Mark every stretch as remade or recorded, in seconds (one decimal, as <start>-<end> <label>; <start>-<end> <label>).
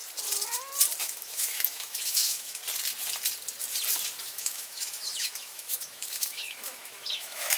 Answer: 0.0-1.0 recorded; 1.0-2.6 remade; 2.6-4.2 recorded; 4.2-7.6 remade